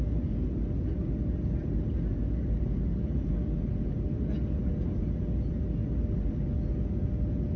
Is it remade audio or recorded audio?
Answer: recorded